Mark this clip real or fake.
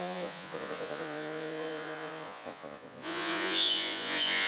fake